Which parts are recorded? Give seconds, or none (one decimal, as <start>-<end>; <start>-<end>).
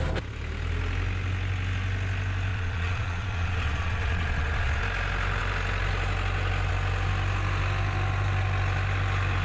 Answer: 0.0-2.5; 4.8-9.4